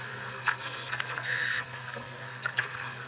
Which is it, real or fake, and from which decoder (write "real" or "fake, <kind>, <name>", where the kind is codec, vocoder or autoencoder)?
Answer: fake, codec, SNAC